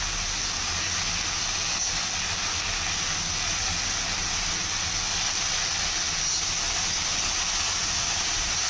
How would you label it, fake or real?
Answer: real